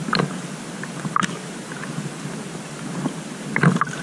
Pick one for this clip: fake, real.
real